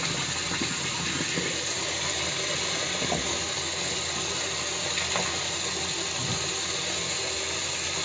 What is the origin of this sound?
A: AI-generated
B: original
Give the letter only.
B